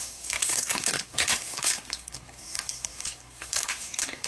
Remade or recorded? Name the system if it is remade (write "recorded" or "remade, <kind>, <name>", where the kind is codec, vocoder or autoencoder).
remade, codec, SNAC